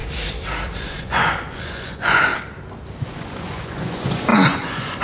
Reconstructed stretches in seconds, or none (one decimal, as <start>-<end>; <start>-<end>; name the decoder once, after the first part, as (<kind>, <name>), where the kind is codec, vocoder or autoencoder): 0.8-2.3 (vocoder, Vocos); 3.0-5.0